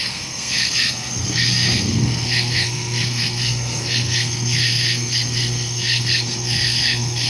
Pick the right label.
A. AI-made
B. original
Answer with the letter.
A